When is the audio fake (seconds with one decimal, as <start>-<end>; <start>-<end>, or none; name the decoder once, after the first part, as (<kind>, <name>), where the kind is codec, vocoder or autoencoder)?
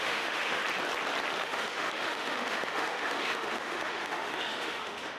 0.0-0.6 (autoencoder, DAC-VAE); 1.4-5.2